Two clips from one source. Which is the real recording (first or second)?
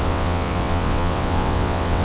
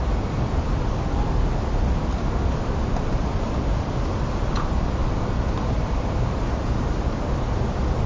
second